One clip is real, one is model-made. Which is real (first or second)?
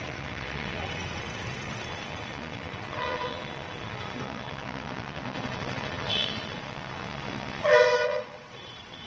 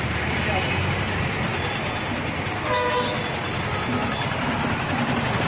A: second